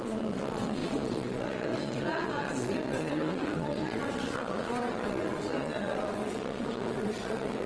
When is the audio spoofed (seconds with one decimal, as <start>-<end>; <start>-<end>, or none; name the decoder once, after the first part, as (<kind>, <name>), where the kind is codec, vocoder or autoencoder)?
0.0-7.7 (vocoder, WaveNeXt)